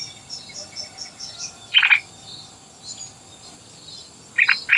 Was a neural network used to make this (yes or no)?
no